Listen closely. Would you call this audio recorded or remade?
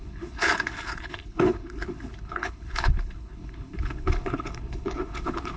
remade